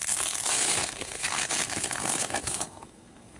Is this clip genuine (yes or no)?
no